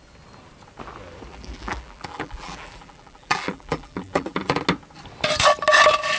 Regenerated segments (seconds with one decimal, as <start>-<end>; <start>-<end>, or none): 1.3-4.6